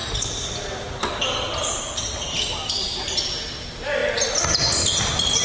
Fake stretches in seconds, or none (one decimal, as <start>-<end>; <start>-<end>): none